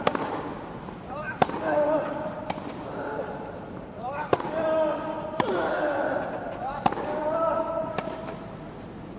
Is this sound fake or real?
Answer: fake